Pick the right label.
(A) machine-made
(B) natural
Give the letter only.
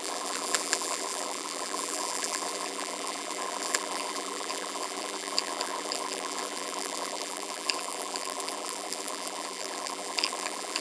A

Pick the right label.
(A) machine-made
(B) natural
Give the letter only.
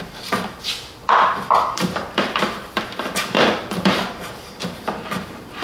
A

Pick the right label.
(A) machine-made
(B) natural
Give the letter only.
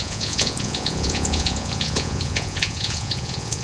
A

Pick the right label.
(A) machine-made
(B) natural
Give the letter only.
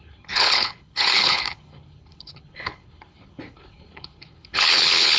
A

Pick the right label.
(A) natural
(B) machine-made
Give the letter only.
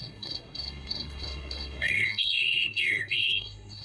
B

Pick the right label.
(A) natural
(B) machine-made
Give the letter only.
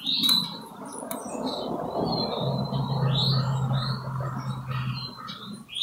A